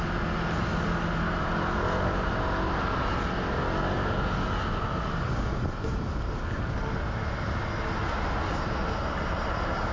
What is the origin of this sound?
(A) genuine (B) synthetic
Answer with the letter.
A